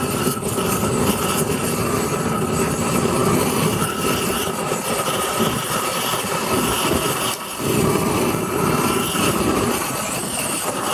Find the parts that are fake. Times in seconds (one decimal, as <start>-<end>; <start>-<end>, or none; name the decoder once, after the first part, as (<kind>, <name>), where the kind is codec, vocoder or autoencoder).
none